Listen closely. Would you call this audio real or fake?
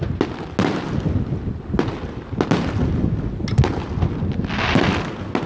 real